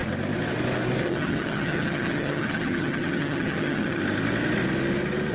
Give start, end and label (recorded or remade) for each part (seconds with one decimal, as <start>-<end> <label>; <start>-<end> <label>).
0.0-1.0 recorded; 1.0-4.0 remade; 4.0-5.3 recorded